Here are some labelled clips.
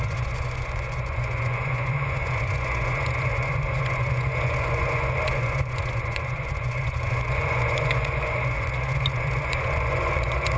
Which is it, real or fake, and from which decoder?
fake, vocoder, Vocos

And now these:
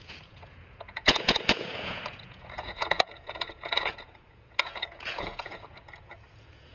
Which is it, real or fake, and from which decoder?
fake, vocoder, Vocos